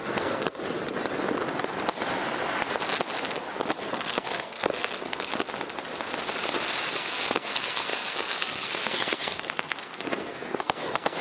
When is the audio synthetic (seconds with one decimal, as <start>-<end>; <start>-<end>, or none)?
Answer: 0.0-0.6; 3.8-5.3; 6.9-11.2